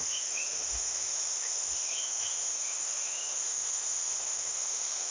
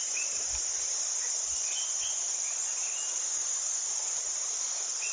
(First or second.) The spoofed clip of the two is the first